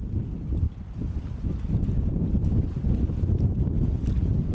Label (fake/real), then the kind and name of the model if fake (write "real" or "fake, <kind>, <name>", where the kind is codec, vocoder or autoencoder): real